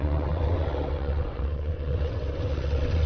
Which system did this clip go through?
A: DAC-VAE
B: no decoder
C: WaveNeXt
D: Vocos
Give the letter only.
C